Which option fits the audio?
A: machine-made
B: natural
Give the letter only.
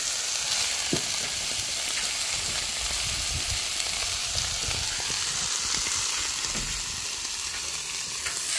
B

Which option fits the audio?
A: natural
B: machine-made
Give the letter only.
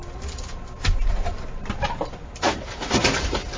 A